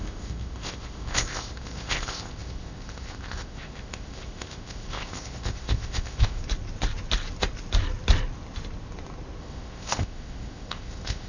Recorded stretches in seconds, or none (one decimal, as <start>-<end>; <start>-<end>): 6.4-9.4